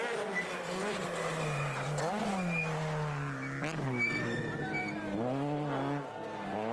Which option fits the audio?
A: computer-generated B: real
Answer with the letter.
B